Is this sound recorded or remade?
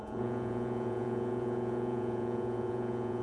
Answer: remade